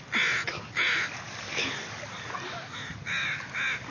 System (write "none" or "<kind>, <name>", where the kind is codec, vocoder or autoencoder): none